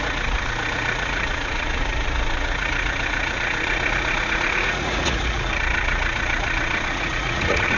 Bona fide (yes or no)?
no